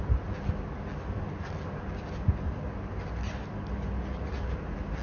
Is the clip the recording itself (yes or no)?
yes